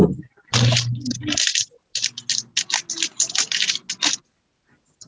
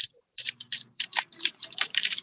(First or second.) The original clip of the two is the first